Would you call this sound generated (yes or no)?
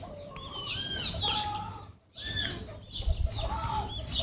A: no